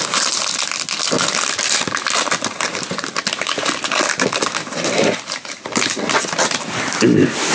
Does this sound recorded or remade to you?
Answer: recorded